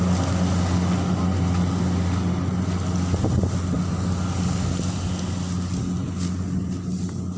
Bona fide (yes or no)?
yes